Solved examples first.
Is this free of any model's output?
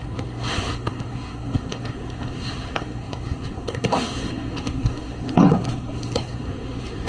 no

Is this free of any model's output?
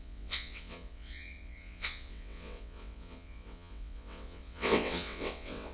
no